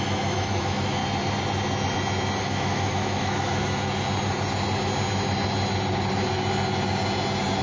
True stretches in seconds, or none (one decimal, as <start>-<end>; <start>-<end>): 1.0-2.4; 3.6-7.6